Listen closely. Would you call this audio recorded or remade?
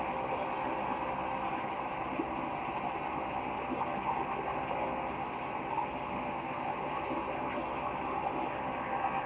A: recorded